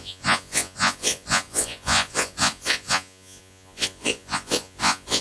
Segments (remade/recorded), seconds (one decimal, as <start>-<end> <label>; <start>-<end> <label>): 0.0-5.2 remade